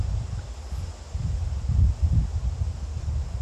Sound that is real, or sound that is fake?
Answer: real